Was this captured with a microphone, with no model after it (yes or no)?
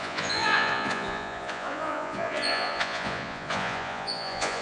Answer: no